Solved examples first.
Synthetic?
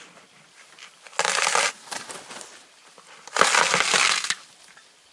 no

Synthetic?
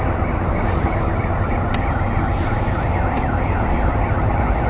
no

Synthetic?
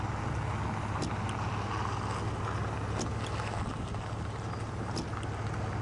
no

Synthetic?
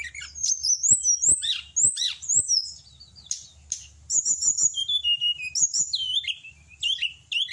no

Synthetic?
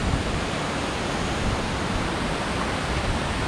no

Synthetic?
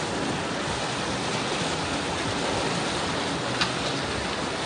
no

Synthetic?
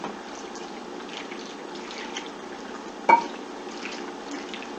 yes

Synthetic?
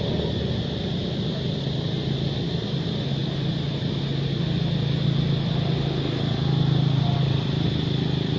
no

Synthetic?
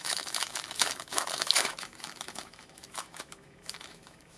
yes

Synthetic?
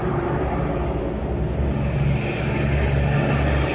no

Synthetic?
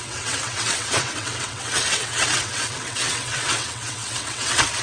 yes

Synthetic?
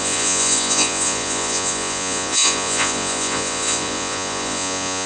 yes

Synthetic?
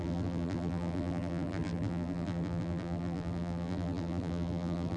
yes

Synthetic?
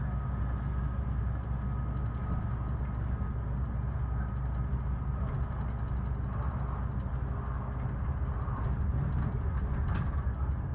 no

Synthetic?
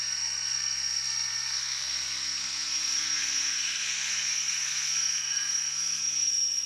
yes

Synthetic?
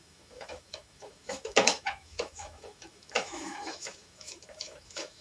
yes